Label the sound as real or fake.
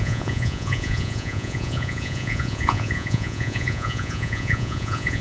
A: fake